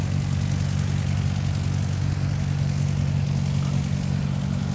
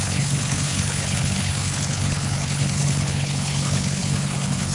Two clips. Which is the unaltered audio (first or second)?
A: first